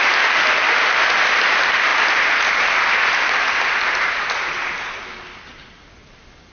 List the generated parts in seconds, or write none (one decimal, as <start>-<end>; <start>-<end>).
none